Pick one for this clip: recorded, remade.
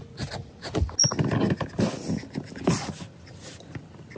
recorded